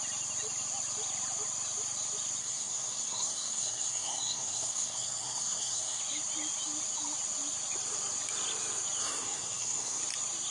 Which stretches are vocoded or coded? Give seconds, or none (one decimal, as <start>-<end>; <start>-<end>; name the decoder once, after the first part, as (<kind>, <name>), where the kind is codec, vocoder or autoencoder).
2.4-6.0 (codec, SNAC); 9.0-10.0